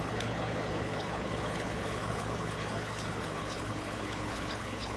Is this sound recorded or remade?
remade